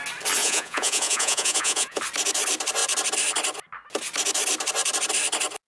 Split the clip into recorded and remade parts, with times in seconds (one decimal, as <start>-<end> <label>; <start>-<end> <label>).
0.0-0.4 recorded; 0.4-2.0 remade; 2.0-5.7 recorded